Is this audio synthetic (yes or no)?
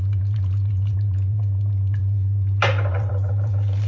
yes